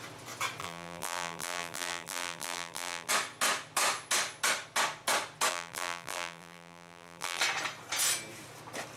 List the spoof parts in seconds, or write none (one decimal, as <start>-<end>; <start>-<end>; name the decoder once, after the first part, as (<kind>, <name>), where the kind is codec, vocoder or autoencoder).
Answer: 0.6-3.1 (vocoder, BigVGAN v2); 5.5-7.4